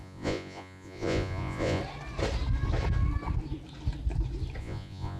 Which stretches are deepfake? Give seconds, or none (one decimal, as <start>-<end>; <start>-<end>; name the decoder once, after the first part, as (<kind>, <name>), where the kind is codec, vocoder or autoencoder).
0.0-1.8 (vocoder, Vocos); 4.6-5.2